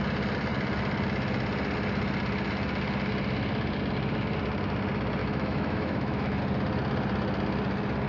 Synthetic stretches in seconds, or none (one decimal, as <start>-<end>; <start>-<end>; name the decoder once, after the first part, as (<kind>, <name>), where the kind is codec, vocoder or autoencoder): 5.2-6.4 (autoencoder, DAC-VAE)